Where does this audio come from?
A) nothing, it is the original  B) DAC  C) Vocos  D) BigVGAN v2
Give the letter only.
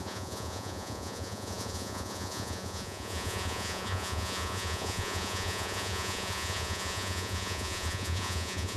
C